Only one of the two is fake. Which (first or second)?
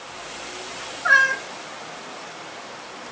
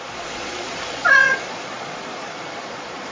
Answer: second